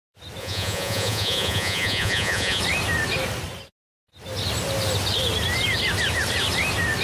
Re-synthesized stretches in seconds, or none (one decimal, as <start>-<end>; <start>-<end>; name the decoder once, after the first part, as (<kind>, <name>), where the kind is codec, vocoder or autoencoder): 0.4-2.6 (vocoder, Vocos)